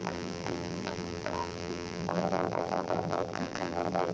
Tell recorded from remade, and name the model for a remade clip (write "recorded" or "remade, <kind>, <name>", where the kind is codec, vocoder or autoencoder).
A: remade, vocoder, BigVGAN v2